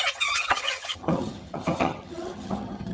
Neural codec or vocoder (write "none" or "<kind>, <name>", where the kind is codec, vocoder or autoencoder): vocoder, HiFi-GAN